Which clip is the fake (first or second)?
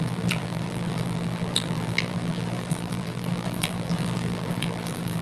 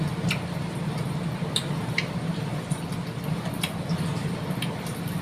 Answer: first